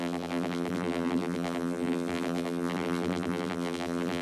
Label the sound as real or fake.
fake